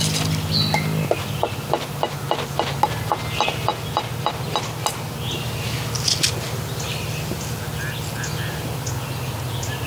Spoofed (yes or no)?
no